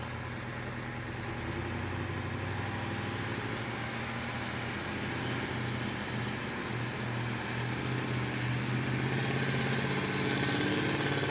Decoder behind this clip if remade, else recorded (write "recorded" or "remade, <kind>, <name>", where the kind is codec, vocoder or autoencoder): recorded